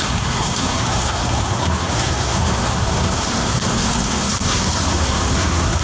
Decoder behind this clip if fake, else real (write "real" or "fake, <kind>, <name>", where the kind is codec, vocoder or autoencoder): fake, codec, SNAC